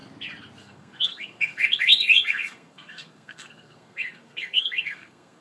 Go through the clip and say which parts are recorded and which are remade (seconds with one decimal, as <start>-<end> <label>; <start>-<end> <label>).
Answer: 0.0-0.6 recorded; 0.6-5.4 remade